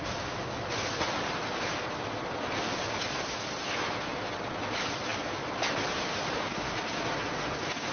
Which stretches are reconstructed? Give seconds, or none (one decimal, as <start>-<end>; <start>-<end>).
none